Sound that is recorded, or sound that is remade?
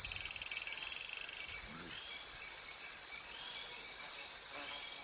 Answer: recorded